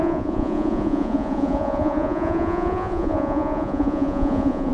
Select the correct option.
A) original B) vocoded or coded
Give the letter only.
B